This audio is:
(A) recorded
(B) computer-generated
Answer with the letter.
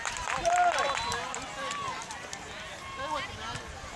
A